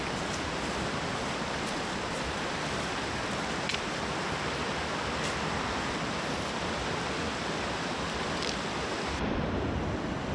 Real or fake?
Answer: real